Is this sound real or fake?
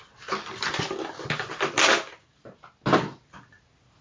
real